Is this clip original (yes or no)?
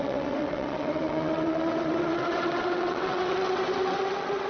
no